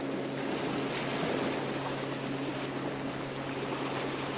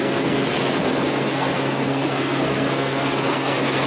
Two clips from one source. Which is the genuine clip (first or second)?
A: first